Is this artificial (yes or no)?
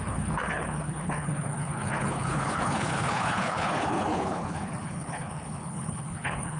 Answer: yes